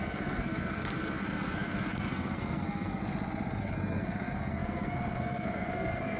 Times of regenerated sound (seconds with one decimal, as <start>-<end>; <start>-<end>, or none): 0.0-3.0; 3.6-6.2